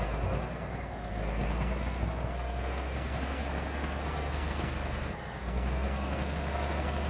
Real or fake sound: fake